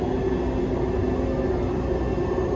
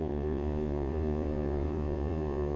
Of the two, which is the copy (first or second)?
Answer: second